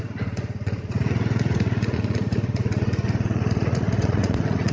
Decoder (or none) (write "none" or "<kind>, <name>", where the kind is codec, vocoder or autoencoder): vocoder, Vocos